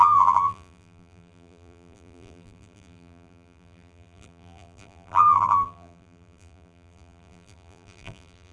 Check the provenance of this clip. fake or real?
fake